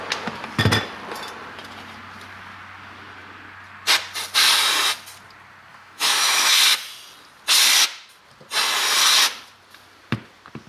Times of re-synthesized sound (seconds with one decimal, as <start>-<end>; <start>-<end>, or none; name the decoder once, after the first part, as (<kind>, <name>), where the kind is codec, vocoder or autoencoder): 5.7-6.6 (autoencoder, DAC-VAE)